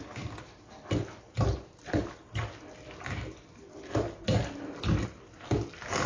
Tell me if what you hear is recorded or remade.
recorded